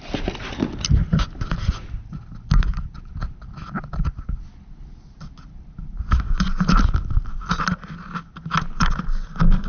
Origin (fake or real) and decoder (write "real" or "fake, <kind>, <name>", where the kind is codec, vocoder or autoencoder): real